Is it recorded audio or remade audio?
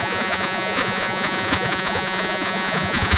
remade